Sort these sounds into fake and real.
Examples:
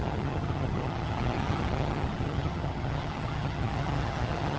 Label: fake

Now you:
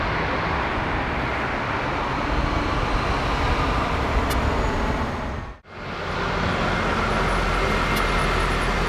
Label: real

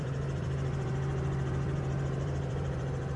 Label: fake